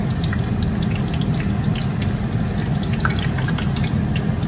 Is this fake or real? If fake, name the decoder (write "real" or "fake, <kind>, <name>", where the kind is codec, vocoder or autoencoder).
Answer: real